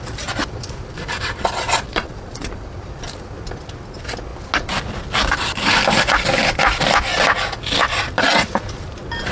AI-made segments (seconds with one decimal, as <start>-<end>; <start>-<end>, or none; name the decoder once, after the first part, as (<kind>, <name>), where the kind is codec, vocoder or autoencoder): 1.9-2.6 (vocoder, Vocos)